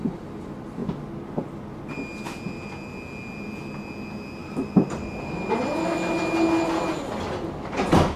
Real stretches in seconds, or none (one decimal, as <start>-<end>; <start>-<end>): 0.0-4.4; 5.5-8.2